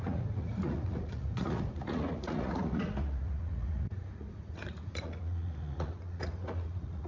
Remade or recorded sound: remade